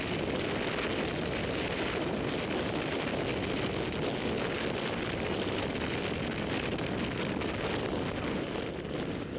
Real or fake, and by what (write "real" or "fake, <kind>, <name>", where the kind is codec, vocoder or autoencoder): real